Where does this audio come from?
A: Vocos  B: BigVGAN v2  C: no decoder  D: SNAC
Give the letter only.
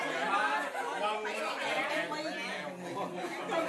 C